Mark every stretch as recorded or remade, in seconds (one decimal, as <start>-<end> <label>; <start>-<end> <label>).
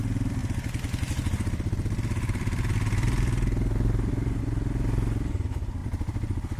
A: 0.0-6.6 recorded